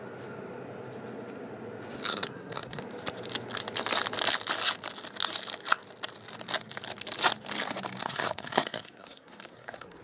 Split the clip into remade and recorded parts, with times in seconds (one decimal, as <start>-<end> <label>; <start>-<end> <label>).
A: 0.0-2.1 recorded; 2.1-2.8 remade; 2.8-8.0 recorded; 8.0-10.0 remade